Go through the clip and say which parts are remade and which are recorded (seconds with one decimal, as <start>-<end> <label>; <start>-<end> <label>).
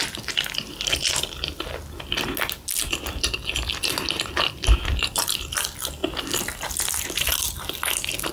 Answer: 0.0-8.3 recorded